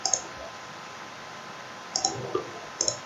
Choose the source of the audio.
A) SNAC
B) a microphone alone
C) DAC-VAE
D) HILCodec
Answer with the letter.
B